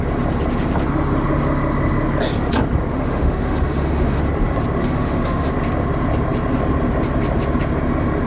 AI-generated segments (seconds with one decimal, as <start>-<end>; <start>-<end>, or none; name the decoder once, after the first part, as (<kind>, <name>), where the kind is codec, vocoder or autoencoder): 2.9-4.2 (autoencoder, DAC-VAE); 4.8-5.5